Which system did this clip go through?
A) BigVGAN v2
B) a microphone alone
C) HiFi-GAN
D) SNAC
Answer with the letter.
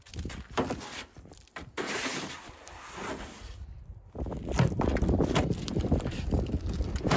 A